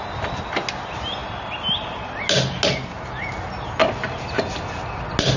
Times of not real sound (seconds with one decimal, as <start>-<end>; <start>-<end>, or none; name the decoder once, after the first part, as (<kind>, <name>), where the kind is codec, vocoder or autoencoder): none